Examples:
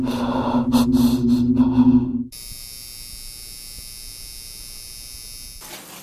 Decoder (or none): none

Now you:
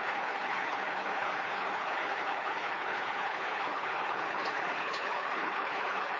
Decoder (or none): codec, HILCodec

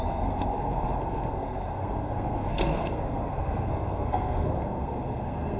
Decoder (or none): codec, SNAC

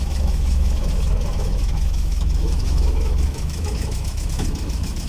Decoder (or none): autoencoder, DAC-VAE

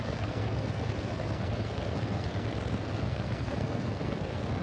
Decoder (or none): codec, SNAC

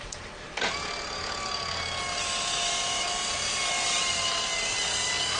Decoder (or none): none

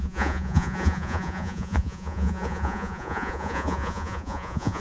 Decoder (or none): vocoder, Vocos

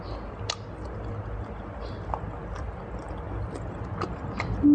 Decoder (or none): none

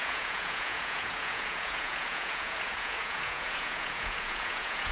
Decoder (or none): vocoder, Vocos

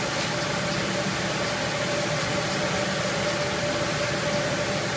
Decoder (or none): none